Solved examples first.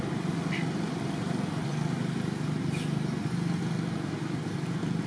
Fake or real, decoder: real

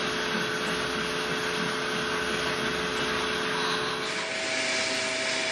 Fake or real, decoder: real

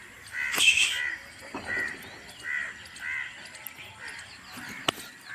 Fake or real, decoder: real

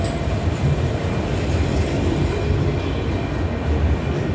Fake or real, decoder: fake, vocoder, BigVGAN v2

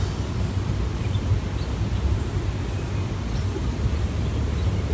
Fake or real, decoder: real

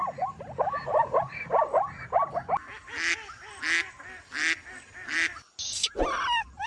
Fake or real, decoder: real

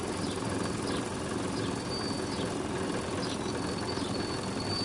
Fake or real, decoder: real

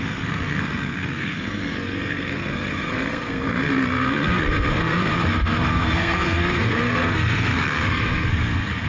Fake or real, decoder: fake, codec, SNAC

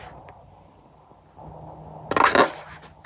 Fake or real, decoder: real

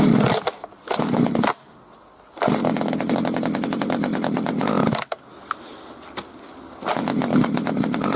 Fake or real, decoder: real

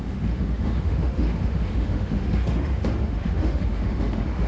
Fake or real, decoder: fake, autoencoder, DAC-VAE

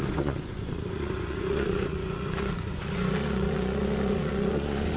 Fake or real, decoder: fake, vocoder, Vocos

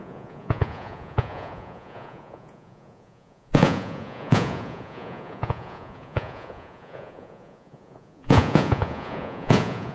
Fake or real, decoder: fake, vocoder, Vocos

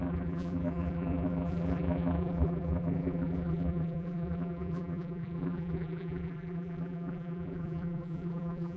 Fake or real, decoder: fake, vocoder, BigVGAN v2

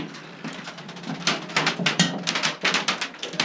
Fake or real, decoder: real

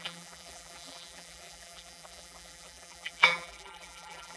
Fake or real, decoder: fake, vocoder, BigVGAN v2